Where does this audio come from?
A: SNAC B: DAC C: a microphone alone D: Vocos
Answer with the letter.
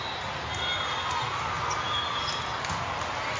C